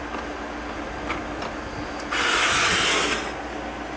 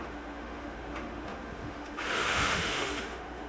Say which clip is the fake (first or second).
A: second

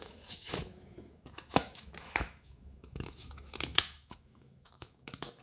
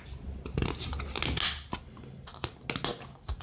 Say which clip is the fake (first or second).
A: first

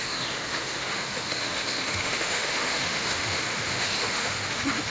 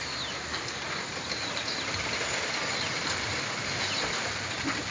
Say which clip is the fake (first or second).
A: first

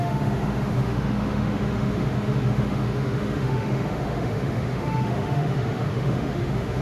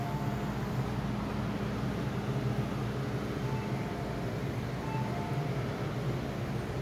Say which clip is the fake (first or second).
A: first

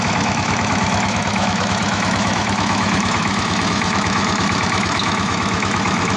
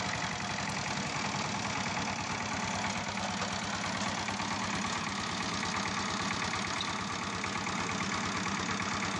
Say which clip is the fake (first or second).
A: first